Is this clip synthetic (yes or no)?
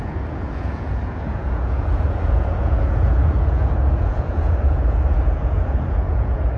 yes